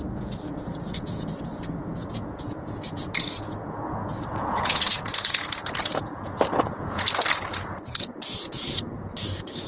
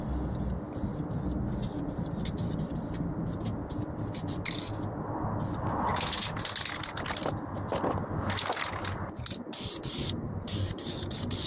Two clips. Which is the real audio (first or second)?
second